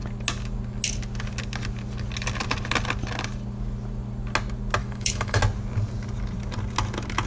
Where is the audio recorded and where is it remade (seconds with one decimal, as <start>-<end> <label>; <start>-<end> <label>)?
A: 0.0-4.8 recorded; 4.8-5.4 remade; 5.4-7.3 recorded